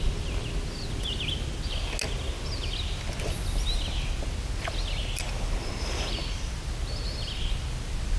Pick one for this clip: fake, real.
real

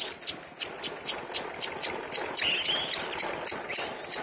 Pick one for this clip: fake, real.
real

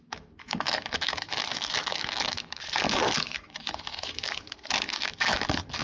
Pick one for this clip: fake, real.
fake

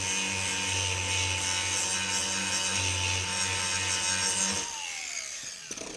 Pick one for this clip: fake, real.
real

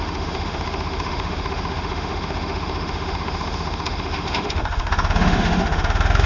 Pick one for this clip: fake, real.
fake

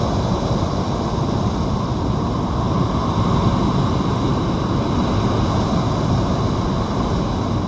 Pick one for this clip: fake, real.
real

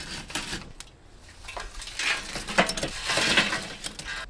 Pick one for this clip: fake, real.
real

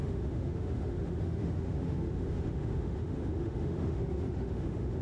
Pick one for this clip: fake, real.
fake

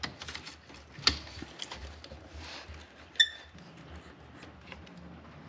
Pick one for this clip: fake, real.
real